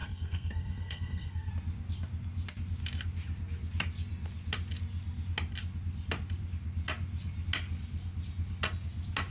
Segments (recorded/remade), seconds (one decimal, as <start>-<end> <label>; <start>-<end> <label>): 0.0-1.5 remade; 1.5-9.3 recorded